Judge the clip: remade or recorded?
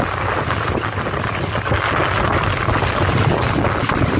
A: recorded